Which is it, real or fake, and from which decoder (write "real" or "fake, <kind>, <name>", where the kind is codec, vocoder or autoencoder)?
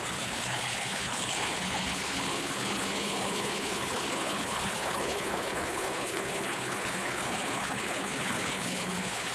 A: fake, codec, HILCodec